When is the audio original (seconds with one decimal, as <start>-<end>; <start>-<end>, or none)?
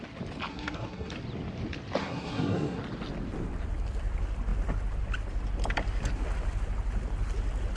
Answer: 0.0-0.5; 1.1-2.0; 2.8-7.8